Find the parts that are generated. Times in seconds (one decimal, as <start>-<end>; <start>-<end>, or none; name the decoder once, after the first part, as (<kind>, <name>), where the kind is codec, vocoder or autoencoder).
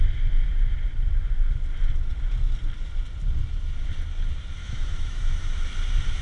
4.6-5.4 (autoencoder, DAC-VAE)